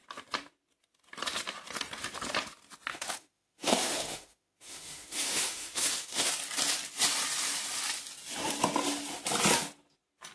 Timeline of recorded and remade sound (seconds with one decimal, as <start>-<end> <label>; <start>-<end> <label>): 0.0-2.9 recorded; 2.9-6.3 remade; 6.3-10.3 recorded